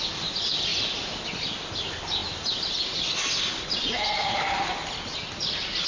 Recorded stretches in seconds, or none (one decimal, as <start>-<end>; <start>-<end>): 2.2-5.4